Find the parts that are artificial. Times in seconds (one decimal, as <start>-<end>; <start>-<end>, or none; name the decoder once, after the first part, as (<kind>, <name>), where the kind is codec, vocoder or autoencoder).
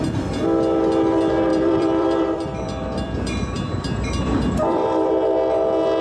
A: 1.5-5.1 (vocoder, BigVGAN v2)